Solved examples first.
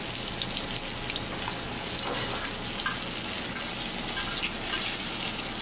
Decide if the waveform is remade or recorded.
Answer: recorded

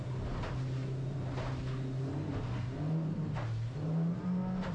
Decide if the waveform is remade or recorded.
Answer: recorded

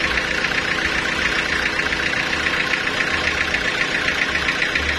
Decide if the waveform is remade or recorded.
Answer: recorded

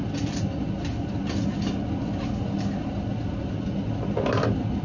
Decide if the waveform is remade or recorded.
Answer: recorded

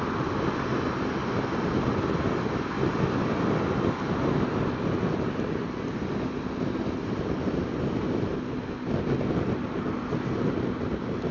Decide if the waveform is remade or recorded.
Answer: recorded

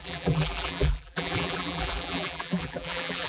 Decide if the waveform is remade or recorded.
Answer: remade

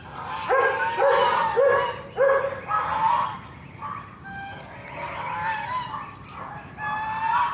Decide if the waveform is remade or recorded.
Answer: recorded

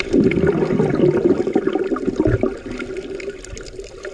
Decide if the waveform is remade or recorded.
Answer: recorded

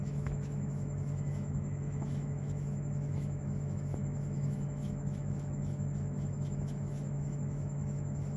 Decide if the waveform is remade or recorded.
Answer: remade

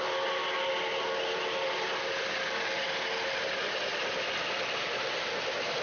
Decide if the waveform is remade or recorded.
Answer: recorded